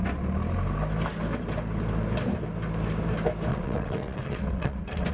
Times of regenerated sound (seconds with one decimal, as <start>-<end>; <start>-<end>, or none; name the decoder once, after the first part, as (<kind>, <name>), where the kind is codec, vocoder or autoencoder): 3.5-5.1 (vocoder, WaveNeXt)